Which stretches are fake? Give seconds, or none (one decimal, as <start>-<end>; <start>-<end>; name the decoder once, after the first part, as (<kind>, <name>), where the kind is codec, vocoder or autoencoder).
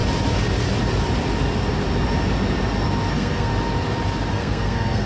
3.1-3.5 (codec, SNAC); 4.3-5.1